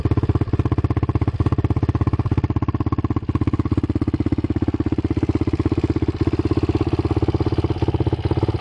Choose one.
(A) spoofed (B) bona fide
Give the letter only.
B